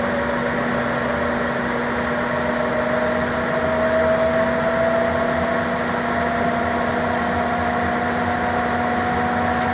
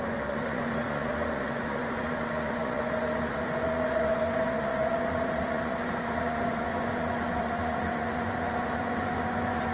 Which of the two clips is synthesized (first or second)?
second